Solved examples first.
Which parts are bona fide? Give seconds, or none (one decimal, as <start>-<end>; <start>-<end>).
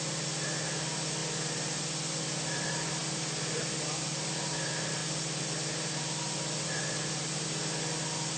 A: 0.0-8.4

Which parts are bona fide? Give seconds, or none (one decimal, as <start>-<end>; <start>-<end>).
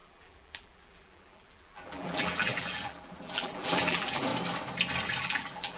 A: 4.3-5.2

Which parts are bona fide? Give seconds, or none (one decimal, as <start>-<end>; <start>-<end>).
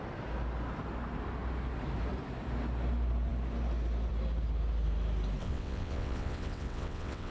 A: 0.0-5.4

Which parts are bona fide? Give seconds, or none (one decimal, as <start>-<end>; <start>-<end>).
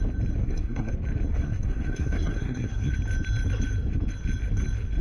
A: 0.0-0.4; 0.9-1.3; 2.9-5.0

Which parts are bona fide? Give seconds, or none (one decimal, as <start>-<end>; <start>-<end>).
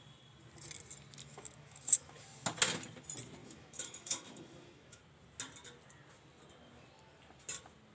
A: 0.0-1.2; 2.2-3.4; 5.0-7.9